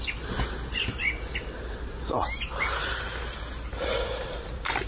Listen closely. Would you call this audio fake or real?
real